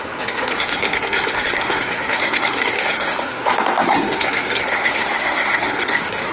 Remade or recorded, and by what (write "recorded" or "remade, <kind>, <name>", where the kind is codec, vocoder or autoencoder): remade, codec, SNAC